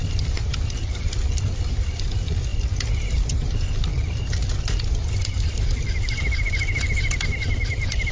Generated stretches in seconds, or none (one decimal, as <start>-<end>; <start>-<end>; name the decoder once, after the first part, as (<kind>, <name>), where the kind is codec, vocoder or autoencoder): none